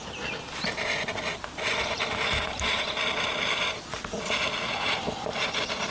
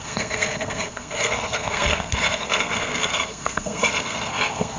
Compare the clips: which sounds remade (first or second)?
second